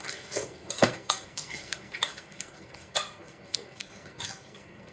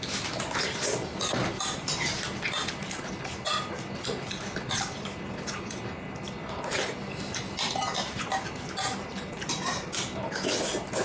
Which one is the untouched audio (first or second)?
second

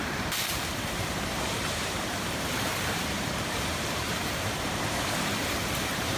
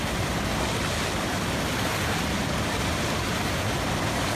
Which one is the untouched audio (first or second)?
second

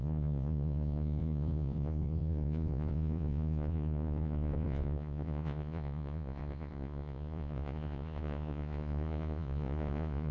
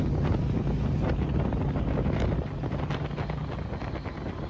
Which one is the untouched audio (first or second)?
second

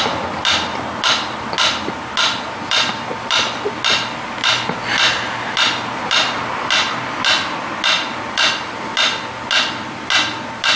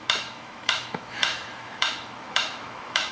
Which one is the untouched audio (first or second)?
first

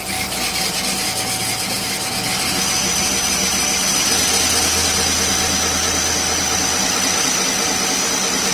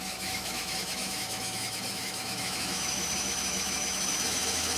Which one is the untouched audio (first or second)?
first